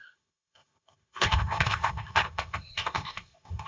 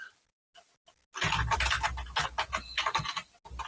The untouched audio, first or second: second